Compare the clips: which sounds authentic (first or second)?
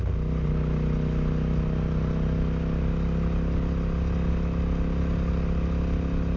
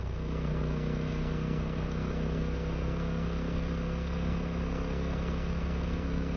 first